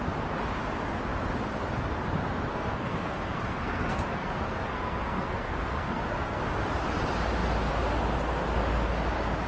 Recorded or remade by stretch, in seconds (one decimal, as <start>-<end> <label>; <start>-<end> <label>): 0.0-2.5 recorded; 2.5-6.4 remade; 6.4-9.5 recorded

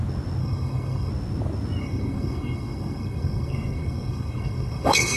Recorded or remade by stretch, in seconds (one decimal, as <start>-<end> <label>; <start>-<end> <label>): 0.0-0.4 recorded; 0.4-1.1 remade; 1.1-1.8 recorded; 1.8-5.2 remade

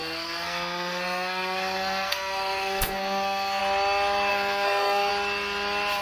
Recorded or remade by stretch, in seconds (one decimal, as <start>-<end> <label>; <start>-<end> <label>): 0.0-3.6 remade; 3.6-4.3 recorded; 4.3-5.1 remade; 5.1-6.0 recorded

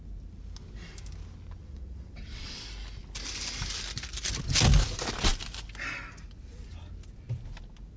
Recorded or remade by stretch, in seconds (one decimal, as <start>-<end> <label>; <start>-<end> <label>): 0.0-1.6 recorded; 1.6-2.6 remade; 2.6-8.0 recorded

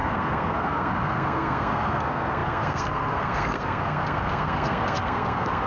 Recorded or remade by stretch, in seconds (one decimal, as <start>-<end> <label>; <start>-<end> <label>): 0.0-5.7 remade

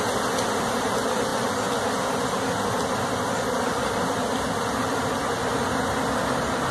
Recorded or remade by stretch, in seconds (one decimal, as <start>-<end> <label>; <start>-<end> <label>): 0.0-6.7 recorded

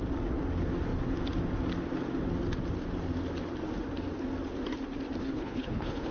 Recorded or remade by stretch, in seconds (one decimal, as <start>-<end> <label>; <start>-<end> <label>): 0.0-5.2 recorded; 5.2-6.1 remade